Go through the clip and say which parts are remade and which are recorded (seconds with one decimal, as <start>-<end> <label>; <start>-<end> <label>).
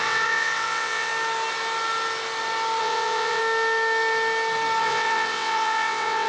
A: 0.0-1.1 remade; 1.1-2.8 recorded; 2.8-3.4 remade; 3.4-4.8 recorded; 4.8-6.3 remade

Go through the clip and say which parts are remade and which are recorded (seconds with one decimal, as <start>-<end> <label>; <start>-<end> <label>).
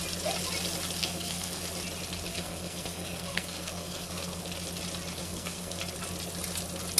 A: 0.0-1.0 recorded; 1.0-1.6 remade; 1.6-2.3 recorded; 2.3-4.4 remade; 4.4-5.2 recorded; 5.2-5.8 remade; 5.8-7.0 recorded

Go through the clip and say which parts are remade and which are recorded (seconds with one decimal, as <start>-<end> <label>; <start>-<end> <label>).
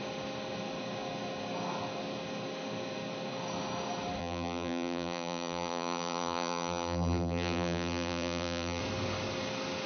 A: 0.0-4.2 recorded; 4.2-8.8 remade; 8.8-9.9 recorded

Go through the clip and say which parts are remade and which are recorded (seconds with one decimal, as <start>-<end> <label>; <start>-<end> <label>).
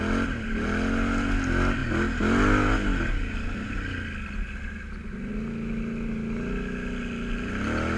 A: 0.0-8.0 recorded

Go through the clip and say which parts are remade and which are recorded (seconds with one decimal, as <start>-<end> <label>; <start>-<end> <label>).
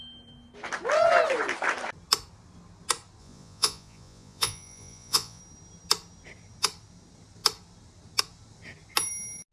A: 0.0-3.2 recorded; 3.2-5.4 remade; 5.4-9.5 recorded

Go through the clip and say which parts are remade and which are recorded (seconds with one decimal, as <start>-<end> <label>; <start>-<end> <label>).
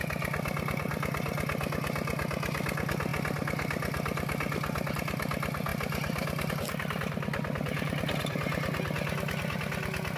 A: 0.0-10.2 recorded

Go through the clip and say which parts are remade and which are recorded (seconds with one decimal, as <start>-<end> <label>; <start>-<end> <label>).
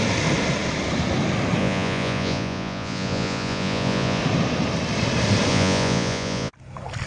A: 0.0-1.6 recorded; 1.6-4.2 remade; 4.2-5.5 recorded; 5.5-6.5 remade; 6.5-7.1 recorded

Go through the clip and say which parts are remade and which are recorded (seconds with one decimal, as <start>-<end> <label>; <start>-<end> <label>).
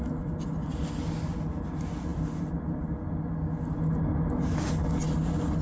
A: 0.0-5.6 recorded